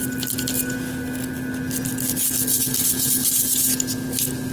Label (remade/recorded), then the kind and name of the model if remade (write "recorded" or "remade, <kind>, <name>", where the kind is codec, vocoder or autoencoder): recorded